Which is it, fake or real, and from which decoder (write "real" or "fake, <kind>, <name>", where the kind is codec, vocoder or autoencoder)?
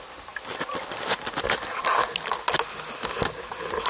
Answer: real